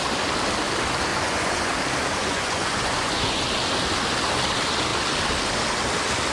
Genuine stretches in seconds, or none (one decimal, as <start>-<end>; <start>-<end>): 0.0-1.1; 1.7-2.2; 3.4-6.3